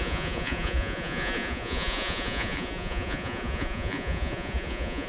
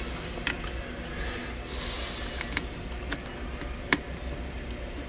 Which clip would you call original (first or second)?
second